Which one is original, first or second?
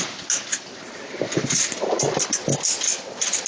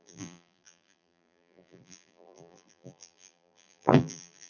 first